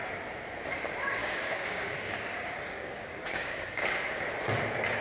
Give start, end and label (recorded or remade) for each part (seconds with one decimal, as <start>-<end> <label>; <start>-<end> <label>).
0.0-1.2 recorded; 1.2-4.2 remade; 4.2-5.0 recorded